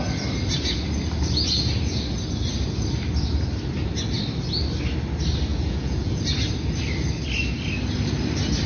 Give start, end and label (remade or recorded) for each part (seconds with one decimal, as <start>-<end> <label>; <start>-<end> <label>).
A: 0.0-5.5 recorded; 5.5-6.2 remade; 6.2-8.7 recorded